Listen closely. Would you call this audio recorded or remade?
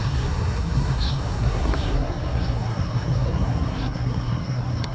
remade